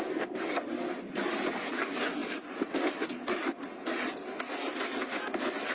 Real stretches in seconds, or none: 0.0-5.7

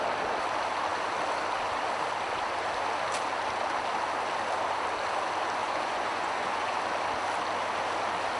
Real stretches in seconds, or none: 0.0-5.6; 6.8-8.4

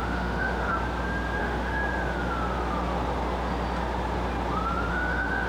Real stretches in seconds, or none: 0.7-1.4; 1.8-4.9

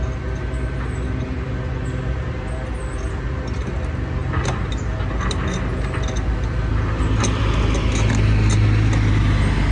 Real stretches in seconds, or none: 0.0-9.7

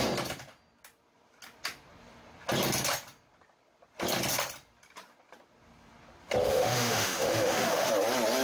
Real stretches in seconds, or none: 0.0-6.4; 7.9-8.4

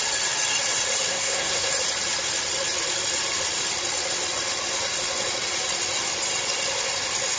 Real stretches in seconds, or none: 0.0-1.1; 1.7-7.4

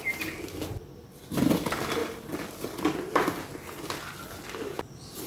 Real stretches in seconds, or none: 0.0-5.3

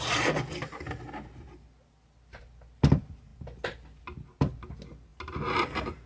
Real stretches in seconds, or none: 0.0-6.1